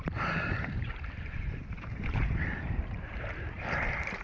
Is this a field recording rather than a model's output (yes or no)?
no